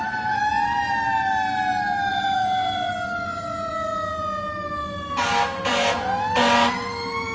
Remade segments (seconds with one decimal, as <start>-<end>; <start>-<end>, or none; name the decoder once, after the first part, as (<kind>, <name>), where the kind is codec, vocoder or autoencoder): 2.1-2.9 (vocoder, Vocos); 5.7-6.2